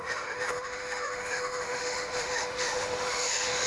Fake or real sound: fake